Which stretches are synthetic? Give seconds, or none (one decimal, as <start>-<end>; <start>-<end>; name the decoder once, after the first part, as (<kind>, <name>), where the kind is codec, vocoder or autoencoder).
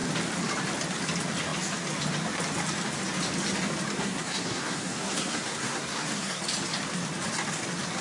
4.0-6.4 (codec, SNAC)